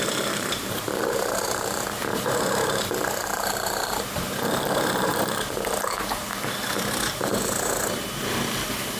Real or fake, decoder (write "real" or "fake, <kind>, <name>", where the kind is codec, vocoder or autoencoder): fake, vocoder, BigVGAN v2